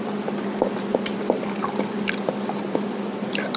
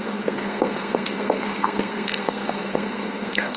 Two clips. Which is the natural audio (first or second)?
first